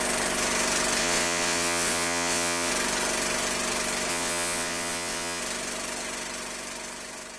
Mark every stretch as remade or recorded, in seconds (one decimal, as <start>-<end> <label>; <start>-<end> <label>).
0.0-1.0 recorded; 1.0-2.7 remade; 2.7-4.1 recorded; 4.1-5.4 remade; 5.4-7.4 recorded